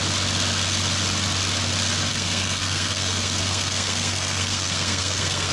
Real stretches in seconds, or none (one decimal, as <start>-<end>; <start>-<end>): 0.0-2.1